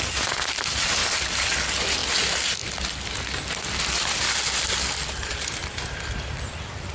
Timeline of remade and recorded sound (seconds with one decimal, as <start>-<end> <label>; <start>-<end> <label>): 0.0-1.0 recorded; 1.0-1.5 remade; 1.5-6.9 recorded